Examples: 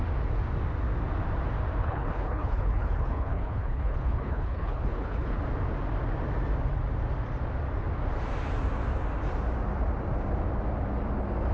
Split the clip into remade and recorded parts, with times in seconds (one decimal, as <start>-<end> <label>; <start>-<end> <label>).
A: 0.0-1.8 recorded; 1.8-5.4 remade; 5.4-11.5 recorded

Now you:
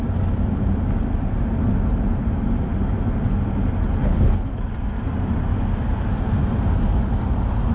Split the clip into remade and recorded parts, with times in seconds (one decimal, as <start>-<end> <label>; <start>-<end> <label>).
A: 0.0-4.0 recorded; 4.0-4.7 remade; 4.7-7.7 recorded

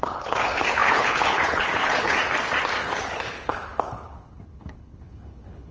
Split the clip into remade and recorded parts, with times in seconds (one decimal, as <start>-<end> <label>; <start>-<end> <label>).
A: 0.0-2.2 remade; 2.2-2.8 recorded; 2.8-5.7 remade

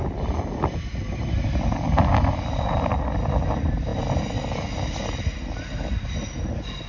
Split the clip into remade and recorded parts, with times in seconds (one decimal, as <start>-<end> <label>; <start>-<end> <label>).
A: 0.0-6.9 recorded